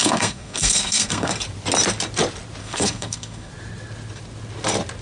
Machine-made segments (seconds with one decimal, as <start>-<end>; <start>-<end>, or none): 0.0-1.3; 2.6-3.5